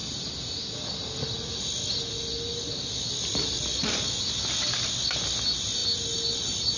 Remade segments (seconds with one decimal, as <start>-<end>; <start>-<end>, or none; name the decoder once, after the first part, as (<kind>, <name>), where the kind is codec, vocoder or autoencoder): none